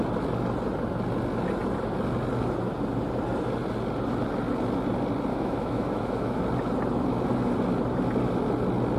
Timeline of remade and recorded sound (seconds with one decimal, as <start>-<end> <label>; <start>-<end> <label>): 0.0-5.3 recorded; 5.3-6.4 remade; 6.4-9.0 recorded